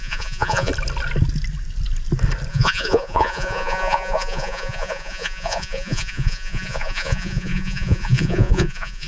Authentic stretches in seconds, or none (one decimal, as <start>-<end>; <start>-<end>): 0.7-2.5